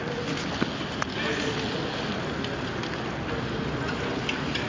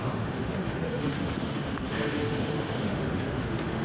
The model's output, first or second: second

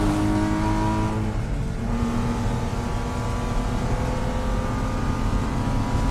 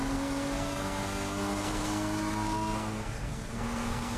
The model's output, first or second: second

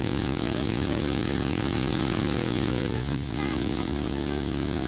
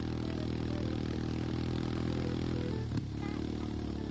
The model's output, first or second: first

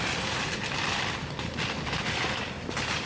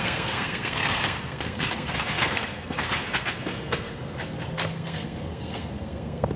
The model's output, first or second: second